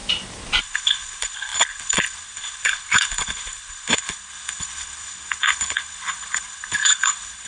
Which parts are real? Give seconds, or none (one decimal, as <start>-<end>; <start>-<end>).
0.0-0.6